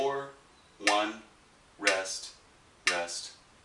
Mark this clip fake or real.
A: real